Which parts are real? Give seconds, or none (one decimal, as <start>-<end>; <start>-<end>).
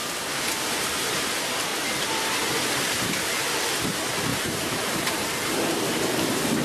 0.0-4.3; 5.8-6.6